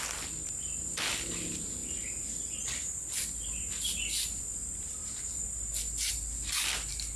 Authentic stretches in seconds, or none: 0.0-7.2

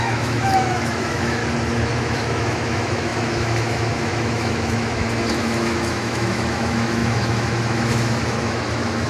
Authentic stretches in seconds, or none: 1.4-2.0

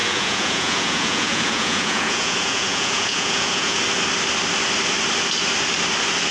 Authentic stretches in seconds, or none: 3.8-6.3

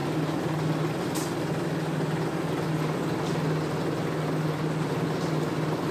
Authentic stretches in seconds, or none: 0.0-5.9

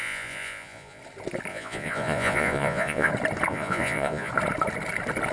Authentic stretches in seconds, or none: 1.0-1.5; 3.1-3.5; 4.3-5.3

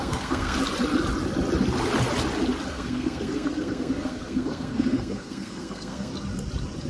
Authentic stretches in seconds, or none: 0.6-2.7; 6.1-6.9

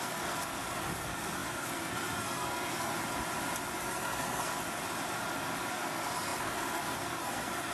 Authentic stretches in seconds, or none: 2.9-3.8; 4.5-5.7